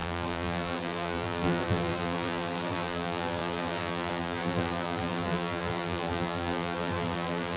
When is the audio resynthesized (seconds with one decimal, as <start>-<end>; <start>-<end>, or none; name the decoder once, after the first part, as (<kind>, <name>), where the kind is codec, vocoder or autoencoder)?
0.0-7.6 (vocoder, BigVGAN v2)